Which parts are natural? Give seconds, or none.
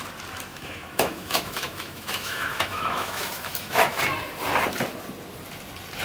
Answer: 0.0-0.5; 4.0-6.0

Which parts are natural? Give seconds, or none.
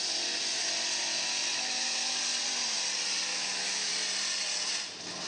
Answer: 0.0-1.5; 2.1-3.3; 3.9-5.3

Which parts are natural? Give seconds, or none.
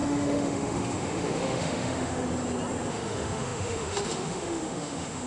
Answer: 2.2-2.9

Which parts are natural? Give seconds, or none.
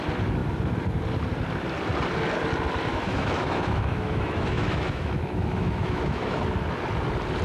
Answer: 0.0-2.9; 6.4-7.4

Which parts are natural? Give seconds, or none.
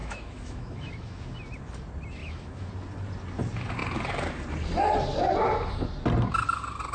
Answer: 1.2-2.2; 2.7-6.9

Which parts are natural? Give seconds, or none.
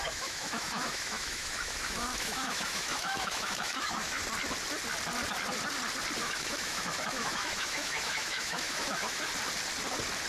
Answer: 4.2-6.2; 9.3-10.3